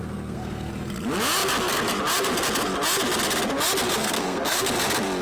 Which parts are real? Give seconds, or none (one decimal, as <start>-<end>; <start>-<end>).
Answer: 0.7-4.0; 4.7-5.2